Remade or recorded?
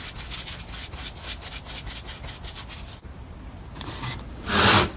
recorded